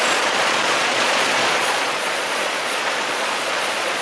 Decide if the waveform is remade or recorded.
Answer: remade